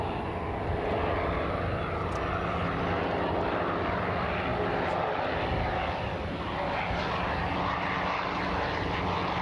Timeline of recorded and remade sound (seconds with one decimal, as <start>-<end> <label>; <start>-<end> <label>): 0.0-9.4 recorded